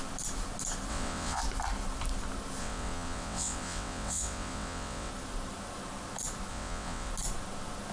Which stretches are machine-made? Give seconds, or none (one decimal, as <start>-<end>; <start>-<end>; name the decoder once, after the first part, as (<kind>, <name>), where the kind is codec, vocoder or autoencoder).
0.9-1.4 (vocoder, WaveNeXt); 2.6-5.1; 6.5-7.1